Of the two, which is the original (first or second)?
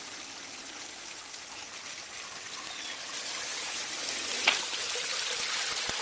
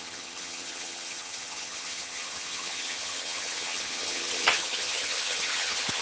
first